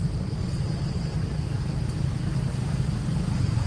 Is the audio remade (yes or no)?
yes